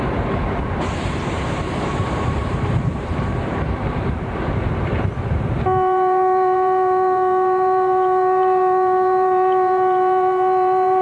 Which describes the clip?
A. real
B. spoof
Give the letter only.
B